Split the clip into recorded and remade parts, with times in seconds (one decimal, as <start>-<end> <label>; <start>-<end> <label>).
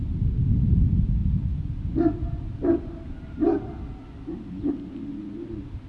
0.0-5.9 recorded